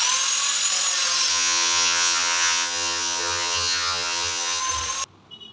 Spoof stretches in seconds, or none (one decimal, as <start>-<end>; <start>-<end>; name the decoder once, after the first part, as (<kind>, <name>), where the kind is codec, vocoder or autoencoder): 1.3-4.6 (vocoder, HiFi-GAN)